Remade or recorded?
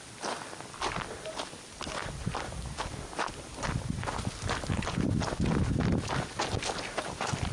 recorded